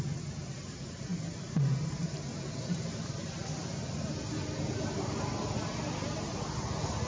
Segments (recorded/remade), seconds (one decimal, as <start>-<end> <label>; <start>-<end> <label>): 0.0-7.1 recorded